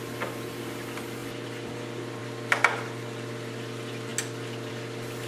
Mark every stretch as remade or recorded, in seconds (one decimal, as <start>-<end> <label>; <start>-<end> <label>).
0.0-5.3 recorded